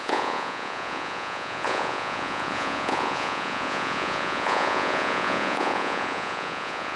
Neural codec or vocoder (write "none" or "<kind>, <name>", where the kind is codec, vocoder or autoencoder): vocoder, Vocos